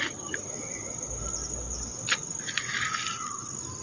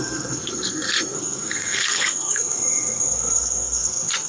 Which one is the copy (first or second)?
second